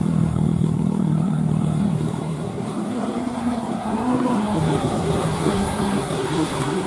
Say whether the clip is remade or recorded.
remade